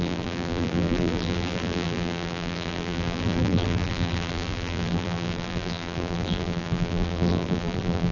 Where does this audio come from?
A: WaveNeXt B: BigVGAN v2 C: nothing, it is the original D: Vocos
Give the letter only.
B